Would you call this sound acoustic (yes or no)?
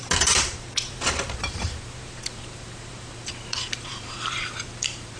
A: no